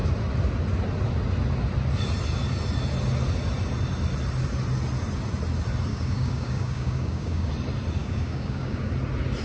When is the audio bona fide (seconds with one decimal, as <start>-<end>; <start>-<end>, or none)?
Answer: 0.0-5.9; 7.5-8.0; 8.9-9.4